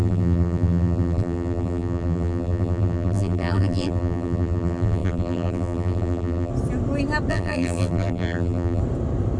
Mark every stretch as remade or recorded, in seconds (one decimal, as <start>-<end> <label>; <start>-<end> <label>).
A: 0.0-6.5 remade; 6.5-7.3 recorded; 7.3-8.8 remade; 8.8-9.4 recorded